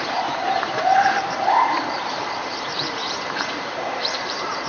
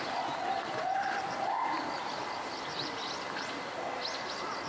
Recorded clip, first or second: second